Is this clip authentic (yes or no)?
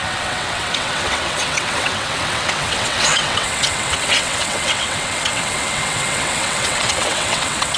no